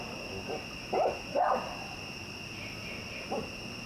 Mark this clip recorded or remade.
recorded